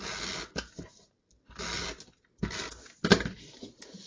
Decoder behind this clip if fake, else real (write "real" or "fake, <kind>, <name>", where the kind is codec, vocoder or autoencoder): real